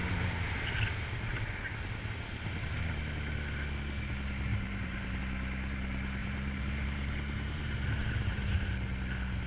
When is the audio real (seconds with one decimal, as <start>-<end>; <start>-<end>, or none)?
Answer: 0.0-4.5; 5.2-6.2; 8.7-9.5